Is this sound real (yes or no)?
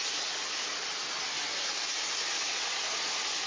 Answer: yes